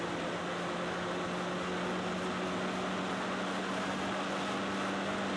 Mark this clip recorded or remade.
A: recorded